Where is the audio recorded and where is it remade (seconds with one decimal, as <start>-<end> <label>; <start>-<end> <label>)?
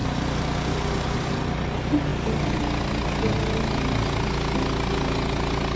0.0-1.4 remade; 1.4-5.8 recorded